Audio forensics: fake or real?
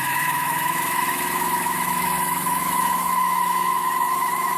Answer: fake